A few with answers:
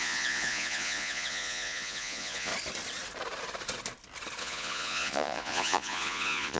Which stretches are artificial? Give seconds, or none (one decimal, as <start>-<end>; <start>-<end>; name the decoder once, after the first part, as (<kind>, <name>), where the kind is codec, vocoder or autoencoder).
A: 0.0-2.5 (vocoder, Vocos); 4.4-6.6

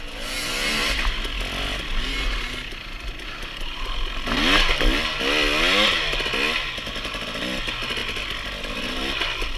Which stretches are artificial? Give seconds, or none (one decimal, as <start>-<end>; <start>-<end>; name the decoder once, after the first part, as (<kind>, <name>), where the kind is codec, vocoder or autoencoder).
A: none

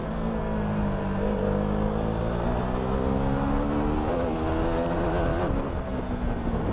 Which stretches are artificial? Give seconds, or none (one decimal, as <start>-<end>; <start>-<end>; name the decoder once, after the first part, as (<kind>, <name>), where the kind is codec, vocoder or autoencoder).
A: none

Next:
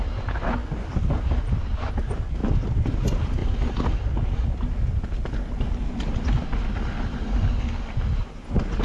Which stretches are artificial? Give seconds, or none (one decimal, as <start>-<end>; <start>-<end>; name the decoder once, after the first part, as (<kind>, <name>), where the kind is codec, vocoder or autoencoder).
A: 2.4-3.0 (vocoder, BigVGAN v2)

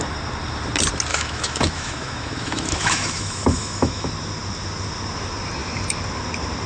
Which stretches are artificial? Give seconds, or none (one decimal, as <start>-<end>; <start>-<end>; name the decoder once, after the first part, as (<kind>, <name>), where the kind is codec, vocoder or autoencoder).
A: 1.1-4.1 (autoencoder, DAC-VAE)